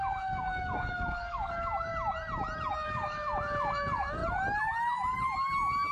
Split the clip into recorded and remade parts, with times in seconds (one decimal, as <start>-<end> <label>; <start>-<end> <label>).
0.0-1.9 remade; 1.9-2.7 recorded; 2.7-4.2 remade; 4.2-5.9 recorded

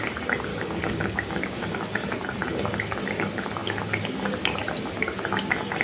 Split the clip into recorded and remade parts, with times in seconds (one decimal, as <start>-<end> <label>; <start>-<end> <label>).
0.0-0.5 recorded; 0.5-1.8 remade; 1.8-5.8 recorded

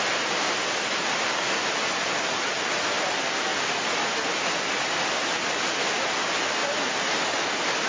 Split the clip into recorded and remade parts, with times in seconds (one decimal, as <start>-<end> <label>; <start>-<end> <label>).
0.0-7.9 recorded

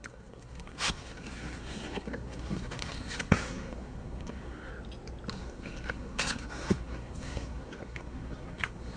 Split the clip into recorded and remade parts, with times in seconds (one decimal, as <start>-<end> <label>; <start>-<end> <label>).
0.0-4.7 remade; 4.7-5.3 recorded; 5.3-9.0 remade